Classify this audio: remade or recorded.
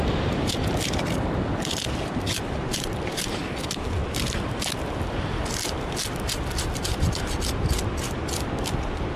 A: recorded